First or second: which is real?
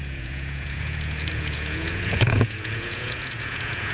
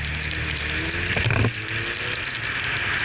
second